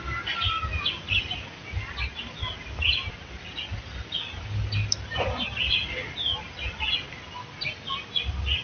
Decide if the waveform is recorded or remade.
recorded